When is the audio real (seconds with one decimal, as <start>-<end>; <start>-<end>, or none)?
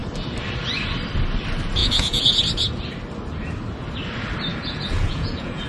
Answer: 0.0-1.8; 2.4-4.5